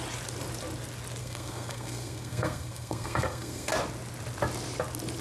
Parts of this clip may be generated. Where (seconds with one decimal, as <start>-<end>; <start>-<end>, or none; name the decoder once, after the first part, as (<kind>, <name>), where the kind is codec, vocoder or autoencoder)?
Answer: 1.2-3.7 (codec, SNAC)

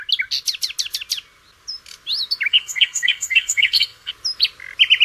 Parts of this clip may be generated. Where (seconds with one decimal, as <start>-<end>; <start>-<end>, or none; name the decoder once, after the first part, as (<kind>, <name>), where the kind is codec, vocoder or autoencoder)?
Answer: 2.5-4.1 (codec, SNAC)

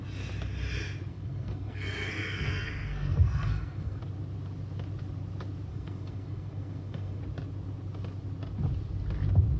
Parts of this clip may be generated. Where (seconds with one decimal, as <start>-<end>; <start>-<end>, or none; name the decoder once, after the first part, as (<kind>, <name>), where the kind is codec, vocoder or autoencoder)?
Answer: 1.1-4.0 (codec, SNAC); 5.7-7.2

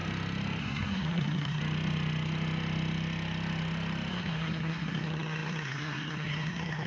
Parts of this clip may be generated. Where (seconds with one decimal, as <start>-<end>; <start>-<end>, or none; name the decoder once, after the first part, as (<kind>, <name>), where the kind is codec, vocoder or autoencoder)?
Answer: 0.6-1.6 (codec, SNAC); 4.1-6.9

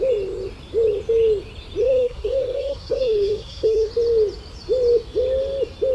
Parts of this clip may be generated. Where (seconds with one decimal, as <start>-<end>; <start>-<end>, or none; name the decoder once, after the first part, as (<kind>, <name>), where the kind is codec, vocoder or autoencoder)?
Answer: 1.8-3.9 (codec, SNAC)